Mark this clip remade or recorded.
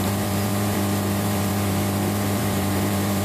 remade